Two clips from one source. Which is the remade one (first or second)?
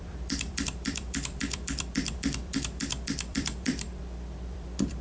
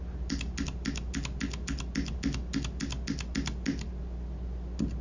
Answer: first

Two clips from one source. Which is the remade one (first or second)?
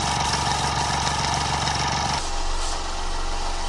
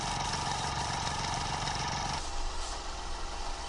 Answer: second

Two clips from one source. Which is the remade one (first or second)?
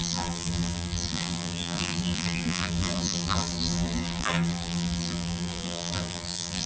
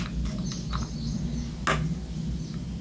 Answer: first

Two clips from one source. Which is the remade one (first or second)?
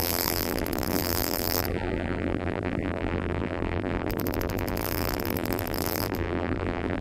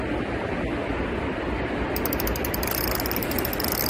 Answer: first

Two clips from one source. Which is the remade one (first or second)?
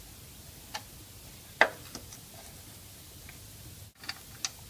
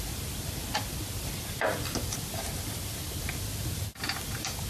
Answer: second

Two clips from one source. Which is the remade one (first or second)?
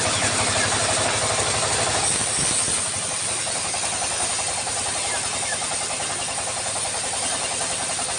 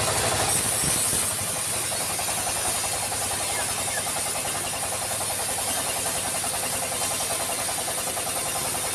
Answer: first